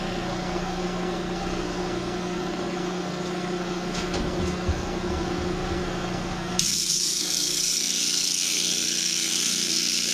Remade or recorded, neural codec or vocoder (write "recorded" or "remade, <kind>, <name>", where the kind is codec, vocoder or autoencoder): remade, codec, SNAC